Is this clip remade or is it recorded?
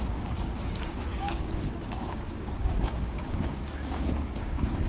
remade